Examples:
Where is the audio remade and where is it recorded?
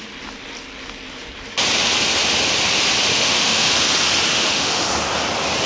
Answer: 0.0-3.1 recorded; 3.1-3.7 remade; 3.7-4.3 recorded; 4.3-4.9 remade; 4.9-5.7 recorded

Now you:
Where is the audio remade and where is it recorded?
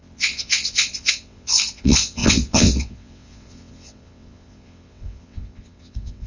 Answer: 0.0-6.3 remade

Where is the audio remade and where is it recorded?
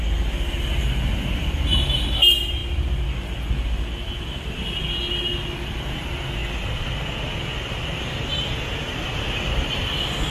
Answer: 0.0-10.3 recorded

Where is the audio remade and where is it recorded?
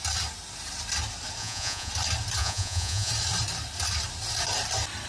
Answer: 0.0-1.4 recorded; 1.4-1.9 remade; 1.9-2.4 recorded; 2.4-3.1 remade; 3.1-5.1 recorded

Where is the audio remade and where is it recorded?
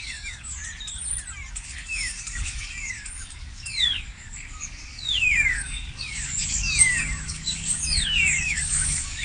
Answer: 0.0-0.6 remade; 0.6-1.5 recorded; 1.5-9.2 remade